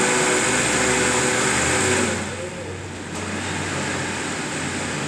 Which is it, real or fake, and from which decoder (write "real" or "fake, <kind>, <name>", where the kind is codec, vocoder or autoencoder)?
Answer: real